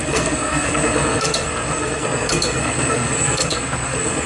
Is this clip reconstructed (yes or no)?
yes